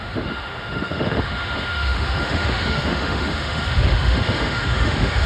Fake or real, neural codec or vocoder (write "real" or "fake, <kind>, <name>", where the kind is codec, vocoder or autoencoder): fake, autoencoder, DAC-VAE